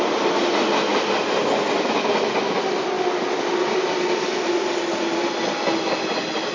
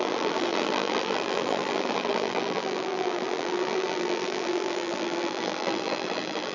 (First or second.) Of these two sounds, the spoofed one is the second